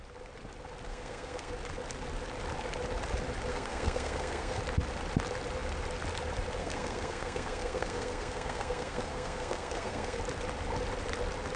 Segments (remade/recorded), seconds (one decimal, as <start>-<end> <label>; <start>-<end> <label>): 0.0-0.9 recorded; 0.9-1.5 remade; 1.5-3.5 recorded; 3.5-4.6 remade; 4.6-6.6 recorded; 6.6-10.2 remade; 10.2-11.6 recorded